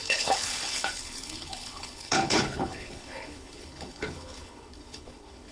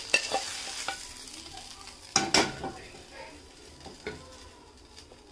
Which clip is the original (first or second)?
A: second